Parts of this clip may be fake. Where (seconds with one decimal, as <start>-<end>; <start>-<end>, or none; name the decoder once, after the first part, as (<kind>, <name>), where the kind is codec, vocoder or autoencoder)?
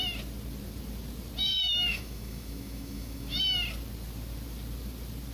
1.5-3.4 (autoencoder, DAC-VAE)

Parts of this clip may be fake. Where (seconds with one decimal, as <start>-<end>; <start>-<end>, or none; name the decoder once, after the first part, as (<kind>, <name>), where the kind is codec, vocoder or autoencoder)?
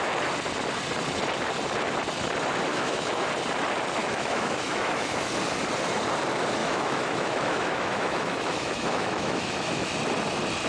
2.7-3.3 (autoencoder, DAC-VAE); 4.0-5.3; 6.6-10.0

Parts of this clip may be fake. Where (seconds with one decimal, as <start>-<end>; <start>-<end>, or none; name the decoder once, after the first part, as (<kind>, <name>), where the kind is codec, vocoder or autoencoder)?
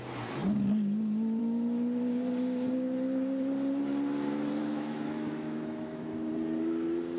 4.6-6.3 (autoencoder, DAC-VAE)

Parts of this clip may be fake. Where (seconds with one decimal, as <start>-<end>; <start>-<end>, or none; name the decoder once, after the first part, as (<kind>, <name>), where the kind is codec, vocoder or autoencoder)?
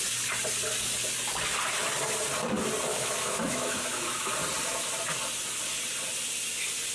2.9-4.3 (autoencoder, DAC-VAE)